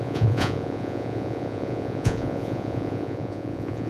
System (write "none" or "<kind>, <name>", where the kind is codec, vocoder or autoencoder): vocoder, Vocos